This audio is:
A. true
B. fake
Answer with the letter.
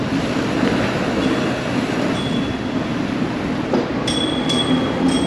A